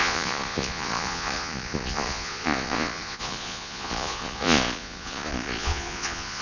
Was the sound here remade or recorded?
remade